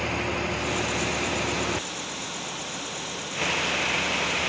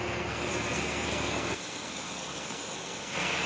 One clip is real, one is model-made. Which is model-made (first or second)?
second